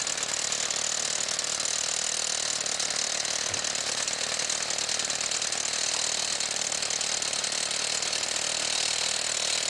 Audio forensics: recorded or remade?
recorded